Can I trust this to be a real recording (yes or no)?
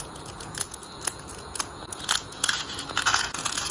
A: no